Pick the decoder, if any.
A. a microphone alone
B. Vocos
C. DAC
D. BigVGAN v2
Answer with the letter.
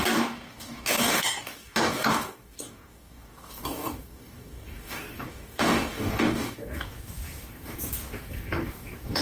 C